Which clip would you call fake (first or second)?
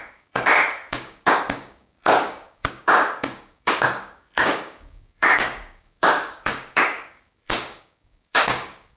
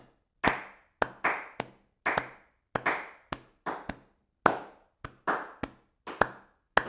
first